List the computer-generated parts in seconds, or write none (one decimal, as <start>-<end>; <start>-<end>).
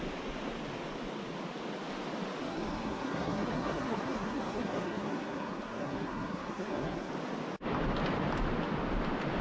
2.4-7.1